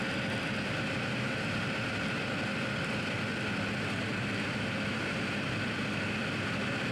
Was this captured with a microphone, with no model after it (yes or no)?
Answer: yes